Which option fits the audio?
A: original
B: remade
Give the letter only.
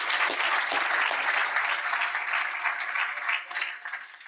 A